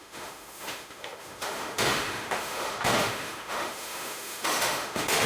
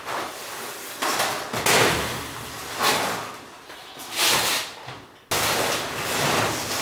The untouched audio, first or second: second